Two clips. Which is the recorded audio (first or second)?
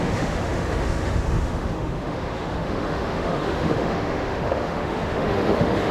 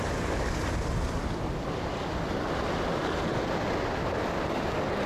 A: second